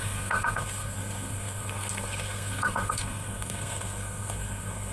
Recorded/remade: remade